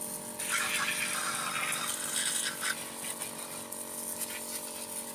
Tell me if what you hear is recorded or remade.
recorded